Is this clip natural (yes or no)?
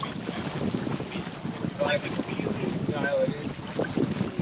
yes